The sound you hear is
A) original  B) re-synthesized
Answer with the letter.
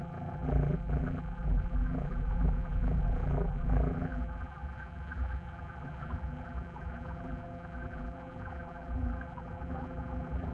B